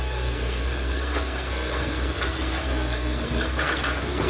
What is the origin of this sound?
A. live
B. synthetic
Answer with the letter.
B